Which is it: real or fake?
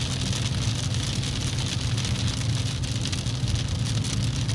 real